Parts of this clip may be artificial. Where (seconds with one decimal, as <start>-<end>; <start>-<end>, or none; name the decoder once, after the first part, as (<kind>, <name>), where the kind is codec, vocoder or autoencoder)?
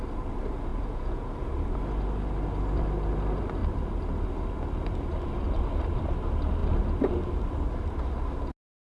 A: 0.7-1.3 (vocoder, Vocos)